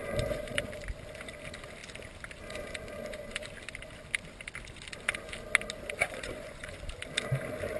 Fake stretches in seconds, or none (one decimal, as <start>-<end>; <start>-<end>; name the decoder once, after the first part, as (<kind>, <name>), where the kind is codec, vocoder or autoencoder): 0.0-0.6 (vocoder, Vocos); 6.0-6.8